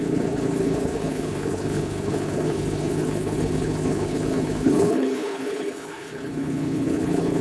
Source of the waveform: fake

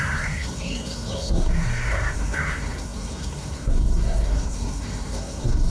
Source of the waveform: fake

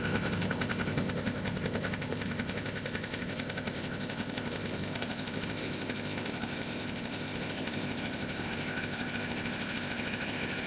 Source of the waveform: fake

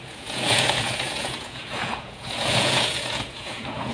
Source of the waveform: fake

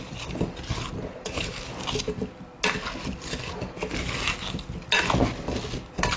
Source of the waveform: real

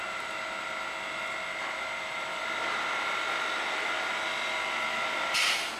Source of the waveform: real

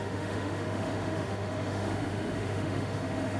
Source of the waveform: fake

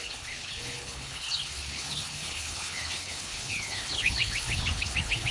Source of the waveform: fake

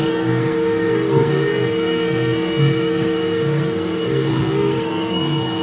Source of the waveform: fake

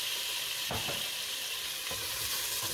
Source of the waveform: real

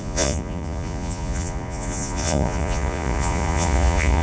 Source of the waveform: fake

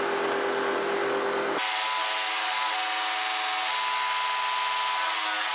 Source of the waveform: real